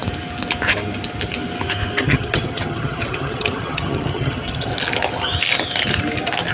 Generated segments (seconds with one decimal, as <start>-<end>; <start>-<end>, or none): 2.0-4.7